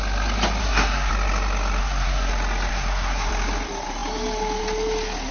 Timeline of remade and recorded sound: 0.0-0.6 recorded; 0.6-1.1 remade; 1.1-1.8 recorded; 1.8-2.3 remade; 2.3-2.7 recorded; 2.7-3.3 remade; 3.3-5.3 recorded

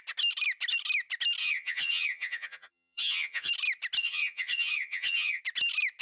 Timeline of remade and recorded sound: 0.0-1.4 recorded; 1.4-3.5 remade; 3.5-4.0 recorded; 4.0-5.4 remade; 5.4-6.0 recorded